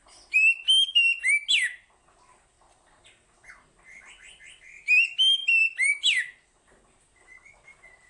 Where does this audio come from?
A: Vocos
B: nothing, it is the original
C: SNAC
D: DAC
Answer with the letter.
B